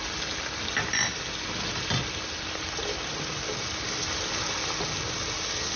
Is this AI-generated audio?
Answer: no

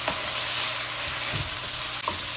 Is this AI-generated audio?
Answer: no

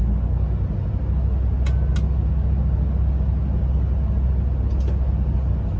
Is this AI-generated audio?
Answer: no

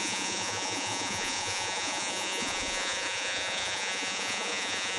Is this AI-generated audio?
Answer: yes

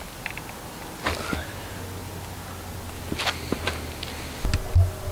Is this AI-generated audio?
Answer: no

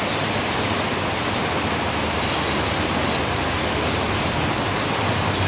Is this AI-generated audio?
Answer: no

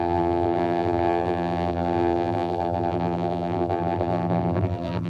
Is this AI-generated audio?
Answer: yes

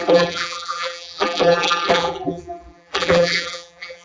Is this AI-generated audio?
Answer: yes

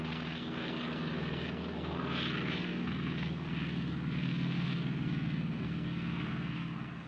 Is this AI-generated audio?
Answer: yes